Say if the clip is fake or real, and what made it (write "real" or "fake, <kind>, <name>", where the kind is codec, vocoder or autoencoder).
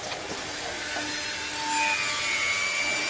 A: real